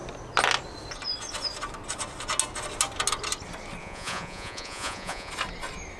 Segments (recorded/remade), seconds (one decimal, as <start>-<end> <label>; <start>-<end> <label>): 0.0-3.8 recorded; 3.8-5.3 remade; 5.3-6.0 recorded